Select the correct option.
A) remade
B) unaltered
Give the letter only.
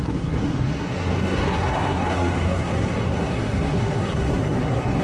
A